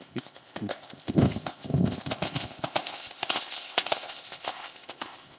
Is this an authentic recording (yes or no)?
no